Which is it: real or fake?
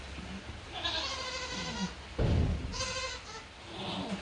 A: real